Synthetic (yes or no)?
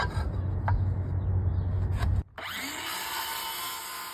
no